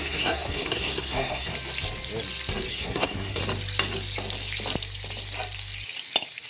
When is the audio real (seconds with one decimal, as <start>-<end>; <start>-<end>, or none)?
1.5-2.7; 3.4-6.5